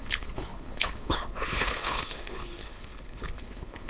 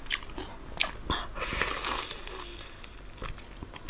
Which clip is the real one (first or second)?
second